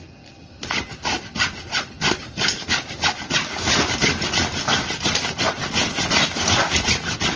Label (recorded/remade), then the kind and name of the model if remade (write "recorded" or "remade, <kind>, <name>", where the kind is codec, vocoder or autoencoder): recorded